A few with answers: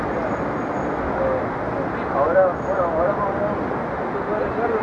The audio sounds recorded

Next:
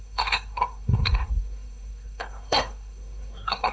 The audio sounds remade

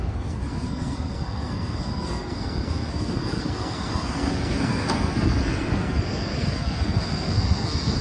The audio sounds remade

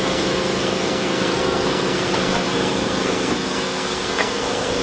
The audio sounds remade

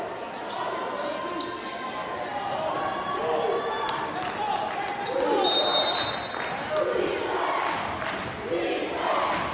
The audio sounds recorded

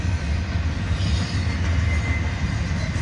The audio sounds recorded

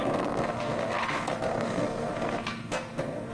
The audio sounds remade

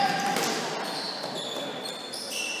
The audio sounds recorded